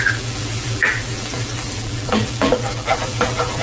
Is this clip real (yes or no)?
no